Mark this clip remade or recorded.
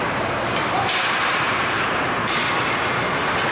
recorded